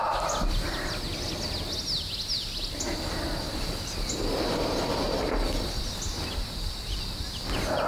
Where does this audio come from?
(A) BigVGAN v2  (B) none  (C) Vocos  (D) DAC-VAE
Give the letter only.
B